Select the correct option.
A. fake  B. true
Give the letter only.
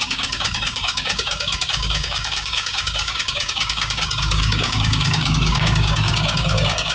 A